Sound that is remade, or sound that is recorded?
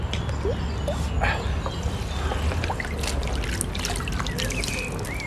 recorded